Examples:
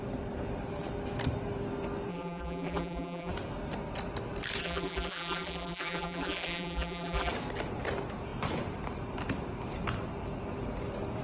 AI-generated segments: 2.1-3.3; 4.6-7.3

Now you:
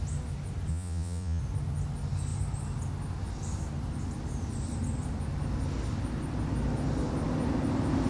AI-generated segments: 0.7-1.4

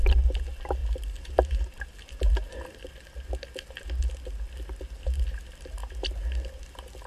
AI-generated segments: 0.8-2.6

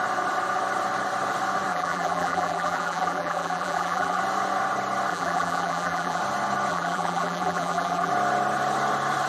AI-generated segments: 1.7-4.2; 5.1-6.2; 6.7-8.1

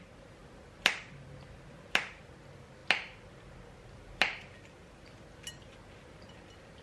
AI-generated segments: none

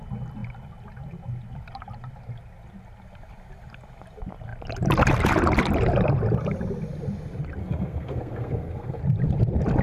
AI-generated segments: 7.6-9.0

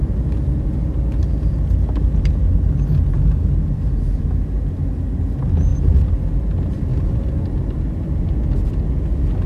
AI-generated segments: none